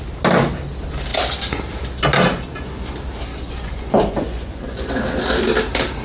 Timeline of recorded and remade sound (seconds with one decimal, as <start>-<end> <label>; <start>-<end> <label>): 0.0-3.3 recorded; 3.3-4.9 remade; 4.9-6.0 recorded